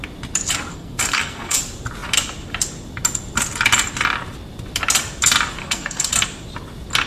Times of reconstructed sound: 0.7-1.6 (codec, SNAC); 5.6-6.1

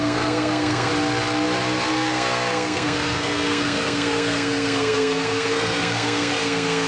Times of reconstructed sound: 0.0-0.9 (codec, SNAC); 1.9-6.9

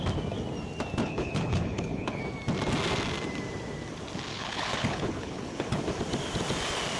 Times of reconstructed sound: 1.0-2.2 (codec, HILCodec); 4.3-5.8